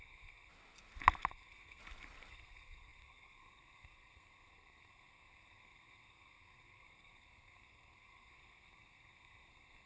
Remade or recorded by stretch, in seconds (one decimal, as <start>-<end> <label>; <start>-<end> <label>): 0.0-0.5 remade; 0.5-1.3 recorded; 1.3-1.8 remade; 1.8-2.3 recorded; 2.3-9.9 remade